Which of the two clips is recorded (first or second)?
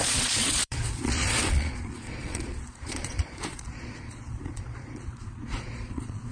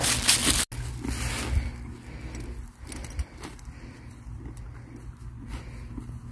second